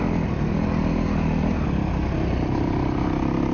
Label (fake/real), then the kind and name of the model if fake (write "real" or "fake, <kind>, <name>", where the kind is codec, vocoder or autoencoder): real